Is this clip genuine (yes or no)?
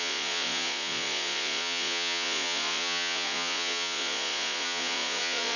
no